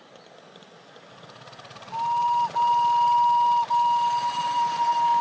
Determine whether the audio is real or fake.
real